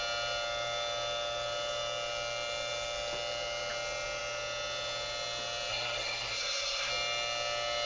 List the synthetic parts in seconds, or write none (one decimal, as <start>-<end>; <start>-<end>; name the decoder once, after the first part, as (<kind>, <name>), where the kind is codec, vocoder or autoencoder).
5.7-6.9 (codec, SNAC)